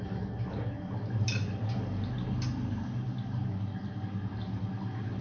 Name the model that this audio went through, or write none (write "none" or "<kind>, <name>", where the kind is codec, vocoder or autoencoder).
none